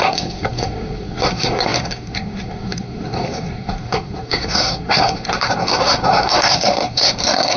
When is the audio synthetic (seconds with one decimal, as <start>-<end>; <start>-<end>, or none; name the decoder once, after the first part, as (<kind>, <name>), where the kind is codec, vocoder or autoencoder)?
0.0-7.6 (codec, SNAC)